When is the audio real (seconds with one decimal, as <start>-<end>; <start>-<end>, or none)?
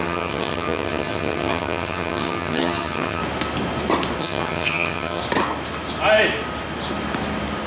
3.2-4.2; 5.2-7.7